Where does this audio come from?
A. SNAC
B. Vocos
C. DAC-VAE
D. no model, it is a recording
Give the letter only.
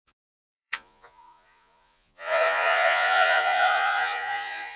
B